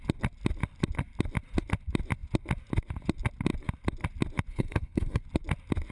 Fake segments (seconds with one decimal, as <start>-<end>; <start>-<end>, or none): 4.5-5.2